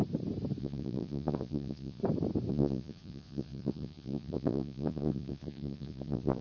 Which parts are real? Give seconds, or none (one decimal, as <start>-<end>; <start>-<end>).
0.0-0.6; 2.0-2.5